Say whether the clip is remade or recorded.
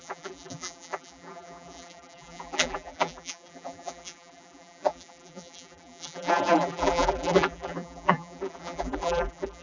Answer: remade